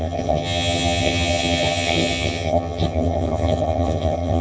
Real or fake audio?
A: fake